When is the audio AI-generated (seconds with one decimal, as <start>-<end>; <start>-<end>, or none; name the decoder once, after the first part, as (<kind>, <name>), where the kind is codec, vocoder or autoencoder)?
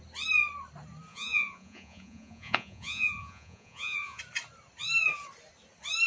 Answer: 1.1-4.2 (vocoder, Vocos)